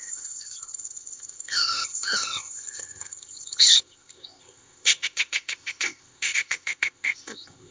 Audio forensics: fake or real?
fake